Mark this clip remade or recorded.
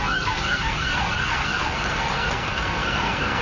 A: remade